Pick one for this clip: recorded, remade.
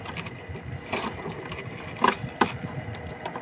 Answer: recorded